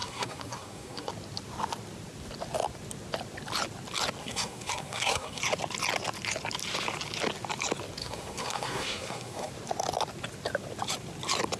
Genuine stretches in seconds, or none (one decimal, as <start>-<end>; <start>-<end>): 1.1-4.2; 5.4-8.0; 9.5-11.6